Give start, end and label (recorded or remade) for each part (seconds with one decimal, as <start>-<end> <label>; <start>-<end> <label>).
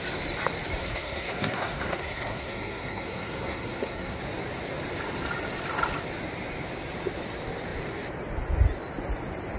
0.0-0.8 recorded; 0.8-4.2 remade; 4.2-9.6 recorded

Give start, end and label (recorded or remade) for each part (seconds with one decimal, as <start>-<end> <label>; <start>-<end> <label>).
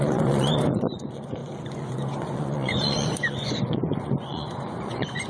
0.0-5.3 remade